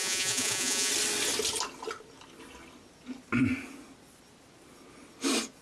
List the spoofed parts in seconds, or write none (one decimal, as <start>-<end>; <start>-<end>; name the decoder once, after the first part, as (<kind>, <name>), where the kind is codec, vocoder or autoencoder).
0.0-0.9 (vocoder, Vocos)